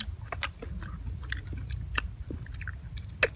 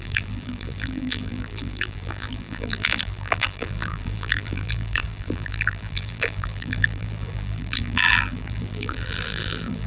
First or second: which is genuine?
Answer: first